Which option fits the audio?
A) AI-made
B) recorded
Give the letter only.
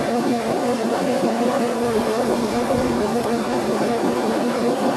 A